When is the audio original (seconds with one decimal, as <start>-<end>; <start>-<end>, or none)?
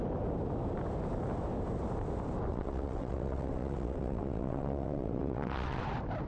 0.0-2.5; 5.8-6.3